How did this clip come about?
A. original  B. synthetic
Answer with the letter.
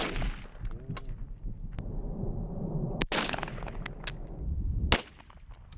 A